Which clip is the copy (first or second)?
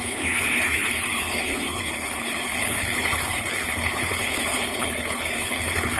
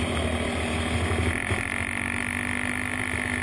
first